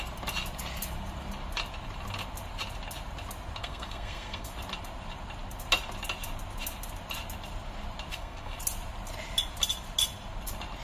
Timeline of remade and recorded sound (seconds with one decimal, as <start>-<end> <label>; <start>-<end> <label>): 0.0-3.6 recorded; 3.6-4.5 remade; 4.5-8.1 recorded; 8.1-8.6 remade; 8.6-10.8 recorded